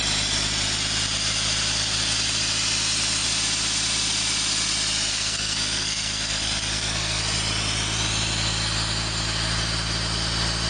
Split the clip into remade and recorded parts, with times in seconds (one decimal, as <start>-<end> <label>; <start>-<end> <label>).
0.0-5.1 recorded; 5.1-7.2 remade; 7.2-10.7 recorded